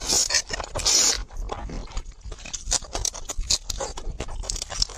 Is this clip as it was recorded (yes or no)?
yes